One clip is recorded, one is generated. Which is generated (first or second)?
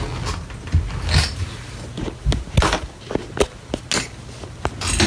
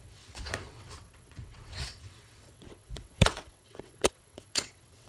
second